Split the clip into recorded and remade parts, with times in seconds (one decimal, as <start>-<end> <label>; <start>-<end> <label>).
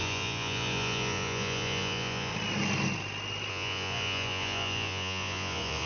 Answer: 0.0-2.3 remade; 2.3-3.5 recorded; 3.5-5.9 remade